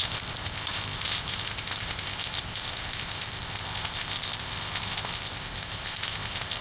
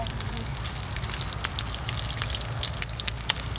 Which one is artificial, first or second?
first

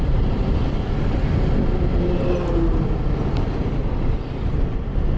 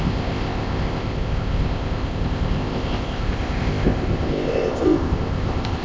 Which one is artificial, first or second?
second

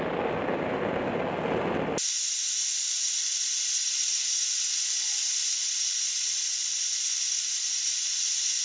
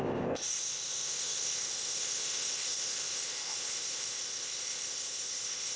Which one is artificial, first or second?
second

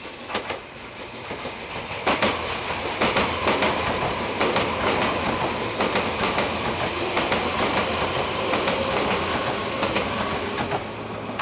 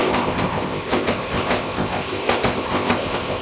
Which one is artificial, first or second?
second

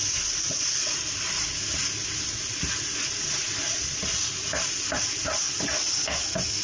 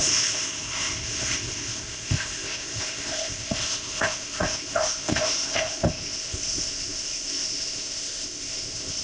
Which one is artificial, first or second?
second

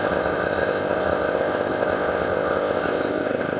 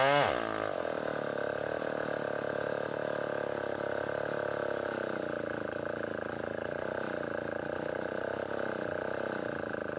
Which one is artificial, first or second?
first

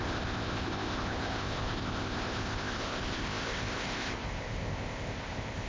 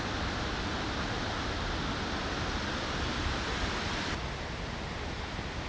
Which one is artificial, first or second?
first